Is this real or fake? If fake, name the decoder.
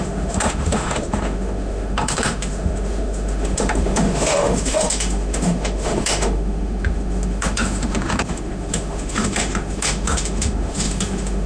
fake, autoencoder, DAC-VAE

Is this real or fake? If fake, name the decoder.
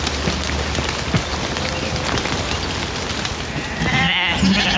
real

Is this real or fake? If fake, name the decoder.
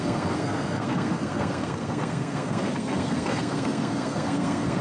fake, codec, SNAC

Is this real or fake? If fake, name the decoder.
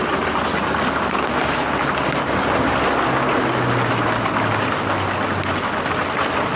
real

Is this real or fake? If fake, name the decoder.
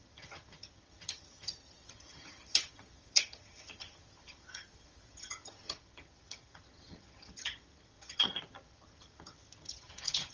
fake, vocoder, HiFi-GAN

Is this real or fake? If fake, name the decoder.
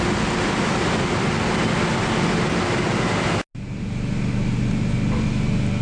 real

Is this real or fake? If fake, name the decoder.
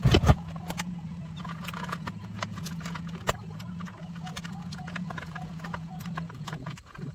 fake, vocoder, Vocos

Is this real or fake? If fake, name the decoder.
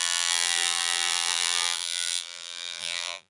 fake, vocoder, BigVGAN v2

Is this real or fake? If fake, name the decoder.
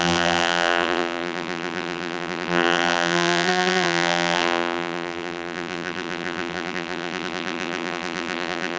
fake, vocoder, BigVGAN v2